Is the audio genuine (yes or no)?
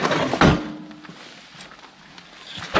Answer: yes